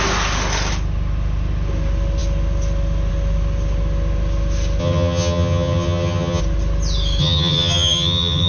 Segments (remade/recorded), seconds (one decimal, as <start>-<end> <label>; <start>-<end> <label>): 0.0-4.8 recorded; 4.8-6.4 remade; 6.4-7.2 recorded; 7.2-8.5 remade